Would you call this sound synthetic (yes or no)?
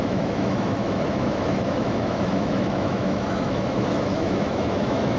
yes